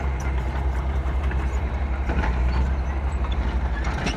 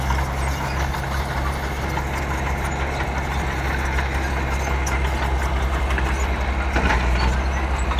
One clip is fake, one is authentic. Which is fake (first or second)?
first